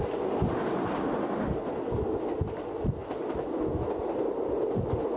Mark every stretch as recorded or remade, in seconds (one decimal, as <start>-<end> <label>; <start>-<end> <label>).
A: 0.0-5.2 recorded